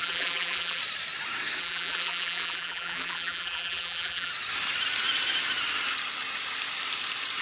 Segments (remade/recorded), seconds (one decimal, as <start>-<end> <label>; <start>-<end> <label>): 0.0-0.8 remade; 0.8-1.6 recorded; 1.6-4.3 remade; 4.3-7.4 recorded